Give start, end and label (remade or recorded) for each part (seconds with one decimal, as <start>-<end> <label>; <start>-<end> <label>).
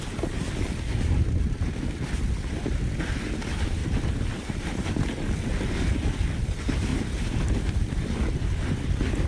0.0-3.8 recorded; 3.8-4.6 remade; 4.6-6.9 recorded; 6.9-8.8 remade; 8.8-9.3 recorded